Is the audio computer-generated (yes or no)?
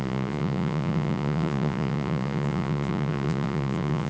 yes